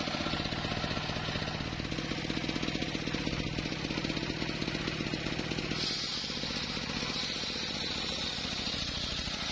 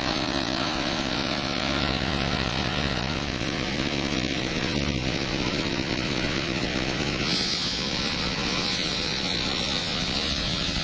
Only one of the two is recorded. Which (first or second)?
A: first